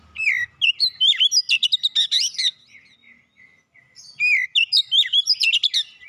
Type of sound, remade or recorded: recorded